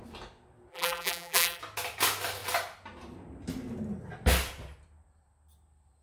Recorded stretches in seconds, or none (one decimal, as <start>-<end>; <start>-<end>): 0.0-0.7; 1.6-6.0

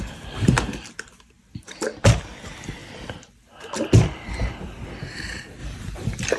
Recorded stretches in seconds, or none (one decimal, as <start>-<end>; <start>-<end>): 2.8-4.6

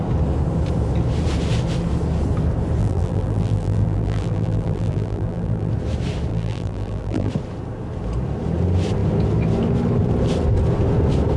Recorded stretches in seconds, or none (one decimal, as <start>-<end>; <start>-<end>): 0.0-2.8; 5.7-6.3; 7.3-11.4